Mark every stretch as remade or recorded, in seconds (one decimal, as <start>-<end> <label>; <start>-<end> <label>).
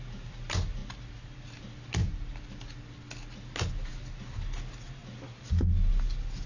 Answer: 0.0-6.5 recorded